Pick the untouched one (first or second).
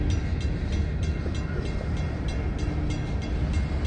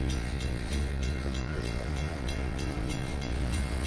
first